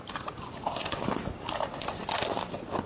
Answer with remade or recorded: recorded